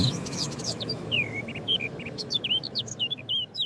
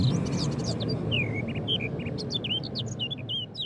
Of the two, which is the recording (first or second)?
second